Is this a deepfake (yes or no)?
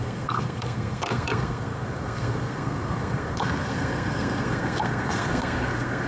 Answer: yes